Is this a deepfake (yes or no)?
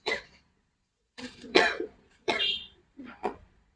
yes